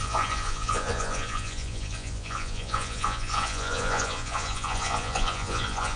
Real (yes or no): no